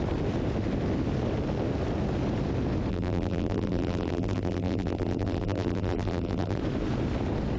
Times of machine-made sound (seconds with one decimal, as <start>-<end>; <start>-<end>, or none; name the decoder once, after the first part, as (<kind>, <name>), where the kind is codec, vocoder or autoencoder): 2.9-6.6 (vocoder, BigVGAN v2)